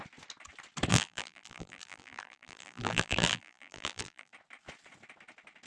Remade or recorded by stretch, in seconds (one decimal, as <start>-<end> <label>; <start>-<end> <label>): 0.0-0.9 recorded; 0.9-4.3 remade; 4.3-5.7 recorded